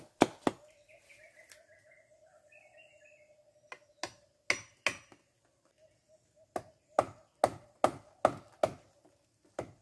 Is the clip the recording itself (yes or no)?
yes